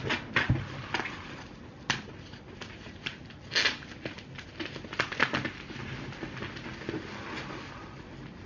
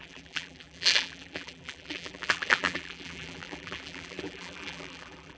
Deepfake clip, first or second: second